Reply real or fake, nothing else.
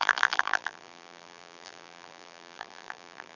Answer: fake